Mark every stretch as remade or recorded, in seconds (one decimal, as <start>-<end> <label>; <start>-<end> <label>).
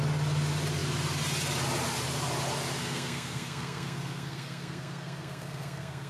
0.0-2.8 recorded; 2.8-6.1 remade